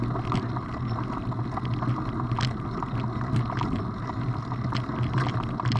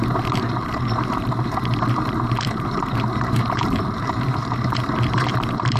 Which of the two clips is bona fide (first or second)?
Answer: first